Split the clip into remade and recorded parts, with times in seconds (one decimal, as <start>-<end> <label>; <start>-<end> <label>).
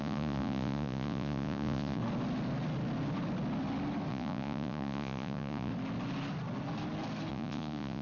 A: 0.0-2.0 remade; 2.0-4.1 recorded; 4.1-5.7 remade; 5.7-7.3 recorded; 7.3-8.0 remade